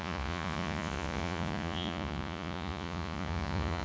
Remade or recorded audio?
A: remade